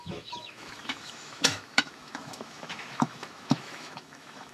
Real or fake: fake